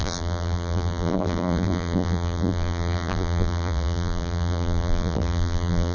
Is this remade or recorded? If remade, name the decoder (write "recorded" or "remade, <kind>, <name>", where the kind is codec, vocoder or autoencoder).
remade, vocoder, BigVGAN v2